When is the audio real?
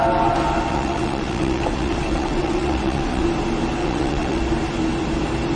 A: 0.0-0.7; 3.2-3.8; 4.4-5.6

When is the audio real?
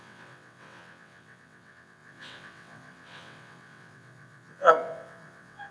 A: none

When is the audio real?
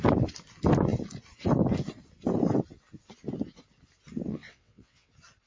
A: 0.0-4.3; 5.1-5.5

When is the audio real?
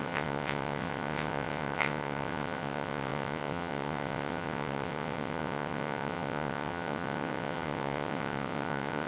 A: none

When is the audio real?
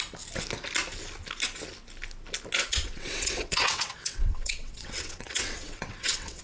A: 0.0-2.6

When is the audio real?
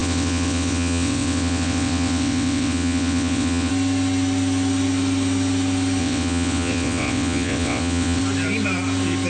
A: 3.7-6.0; 8.2-9.3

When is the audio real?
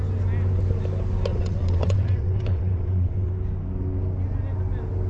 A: 0.0-1.3; 3.3-5.1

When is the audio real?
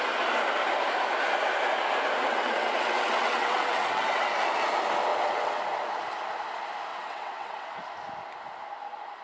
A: 0.0-2.2; 4.3-5.1; 5.6-6.9; 7.8-9.2